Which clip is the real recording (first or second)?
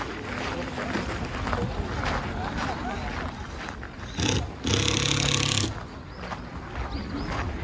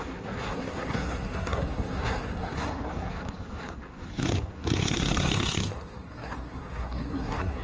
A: first